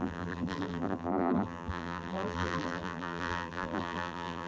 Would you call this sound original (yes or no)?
no